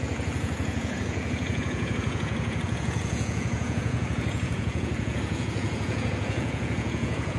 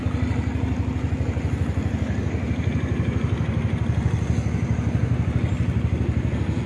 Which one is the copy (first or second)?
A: first